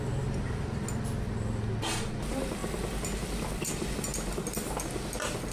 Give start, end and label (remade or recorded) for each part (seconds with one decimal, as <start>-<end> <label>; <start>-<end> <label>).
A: 0.0-5.5 recorded